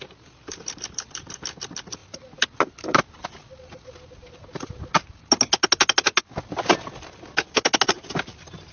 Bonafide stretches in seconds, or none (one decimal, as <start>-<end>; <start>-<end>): 0.0-8.7